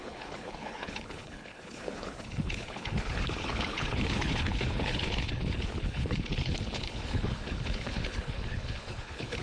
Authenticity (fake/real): fake